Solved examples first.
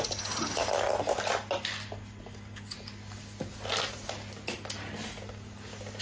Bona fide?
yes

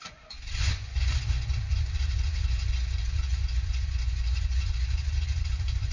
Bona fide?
no